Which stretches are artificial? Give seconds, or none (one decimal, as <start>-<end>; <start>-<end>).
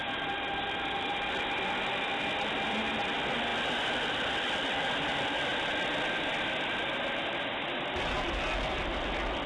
3.5-5.7